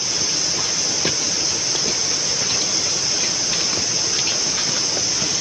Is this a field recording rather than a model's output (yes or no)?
yes